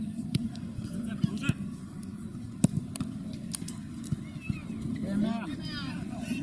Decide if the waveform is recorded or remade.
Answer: recorded